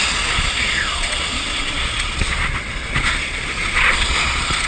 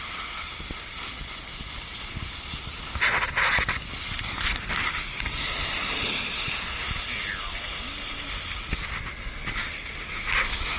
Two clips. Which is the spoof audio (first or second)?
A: first